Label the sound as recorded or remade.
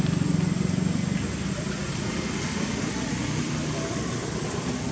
recorded